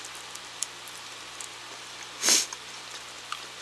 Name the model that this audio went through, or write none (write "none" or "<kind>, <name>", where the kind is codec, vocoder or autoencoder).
none